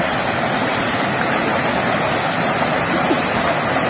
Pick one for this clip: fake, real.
real